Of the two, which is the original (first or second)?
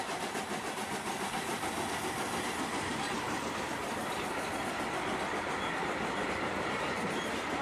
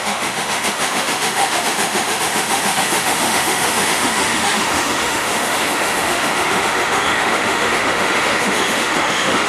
first